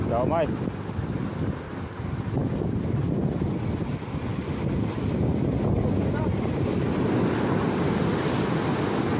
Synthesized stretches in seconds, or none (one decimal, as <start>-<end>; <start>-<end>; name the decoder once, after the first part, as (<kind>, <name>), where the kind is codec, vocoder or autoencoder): none